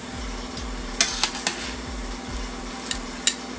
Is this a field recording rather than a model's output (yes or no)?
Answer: yes